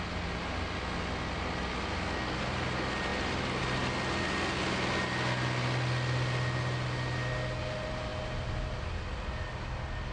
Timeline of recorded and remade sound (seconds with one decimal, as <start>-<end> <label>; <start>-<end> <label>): 0.0-10.1 recorded